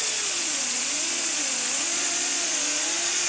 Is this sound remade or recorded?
remade